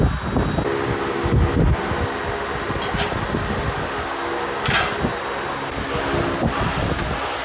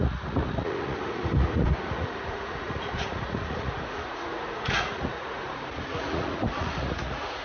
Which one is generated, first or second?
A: second